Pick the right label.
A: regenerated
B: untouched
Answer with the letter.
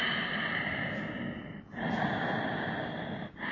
B